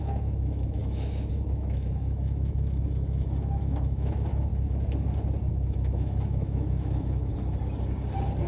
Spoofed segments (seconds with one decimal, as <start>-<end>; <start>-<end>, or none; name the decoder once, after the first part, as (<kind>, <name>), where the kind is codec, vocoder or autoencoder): 0.0-4.5 (autoencoder, DAC-VAE); 5.5-7.3